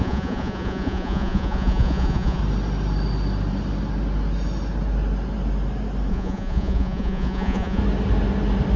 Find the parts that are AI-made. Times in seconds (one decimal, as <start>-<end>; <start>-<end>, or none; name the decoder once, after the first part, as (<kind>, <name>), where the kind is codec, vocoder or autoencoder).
0.0-2.4 (vocoder, Vocos); 6.1-7.8